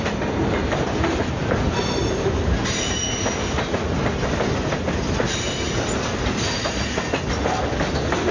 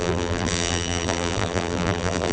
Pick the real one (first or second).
first